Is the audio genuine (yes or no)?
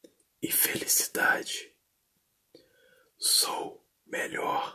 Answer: yes